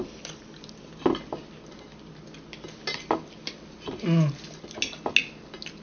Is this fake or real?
real